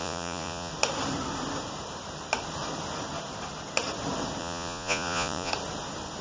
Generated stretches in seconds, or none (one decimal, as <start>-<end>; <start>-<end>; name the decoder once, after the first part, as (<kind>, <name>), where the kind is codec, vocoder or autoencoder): 0.0-0.7 (vocoder, Vocos); 4.4-5.5